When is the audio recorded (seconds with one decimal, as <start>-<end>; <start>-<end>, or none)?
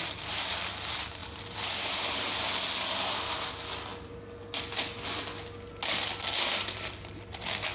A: 0.0-7.7